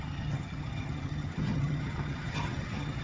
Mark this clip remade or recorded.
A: remade